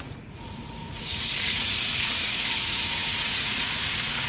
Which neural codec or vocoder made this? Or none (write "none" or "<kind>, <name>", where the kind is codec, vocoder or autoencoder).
vocoder, Vocos